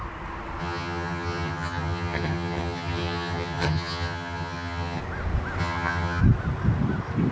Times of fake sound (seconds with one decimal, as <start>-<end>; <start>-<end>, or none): 0.6-5.0; 5.6-6.2